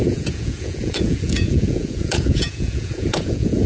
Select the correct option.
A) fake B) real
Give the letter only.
A